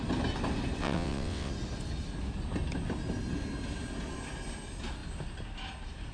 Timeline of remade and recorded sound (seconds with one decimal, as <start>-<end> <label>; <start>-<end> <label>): 0.0-0.8 recorded; 0.8-1.5 remade; 1.5-6.1 recorded